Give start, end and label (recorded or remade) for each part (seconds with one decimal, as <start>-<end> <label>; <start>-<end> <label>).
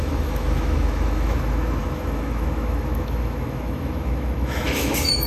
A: 0.0-5.3 remade